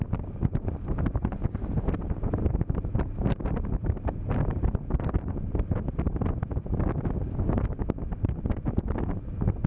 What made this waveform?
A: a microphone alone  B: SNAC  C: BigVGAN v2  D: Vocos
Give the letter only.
C